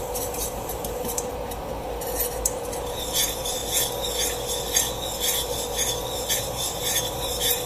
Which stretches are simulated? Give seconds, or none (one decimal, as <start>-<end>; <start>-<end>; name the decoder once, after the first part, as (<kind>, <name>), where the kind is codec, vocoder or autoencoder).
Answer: 0.0-3.6 (vocoder, BigVGAN v2); 6.3-7.7